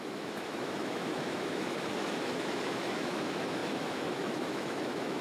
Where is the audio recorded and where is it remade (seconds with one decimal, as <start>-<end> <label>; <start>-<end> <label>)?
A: 0.0-5.2 remade